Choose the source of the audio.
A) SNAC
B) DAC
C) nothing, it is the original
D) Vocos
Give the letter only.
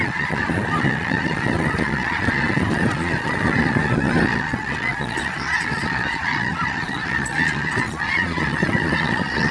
D